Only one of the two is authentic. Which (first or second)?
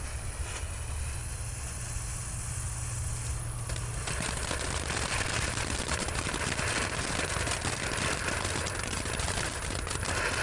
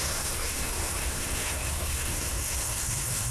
first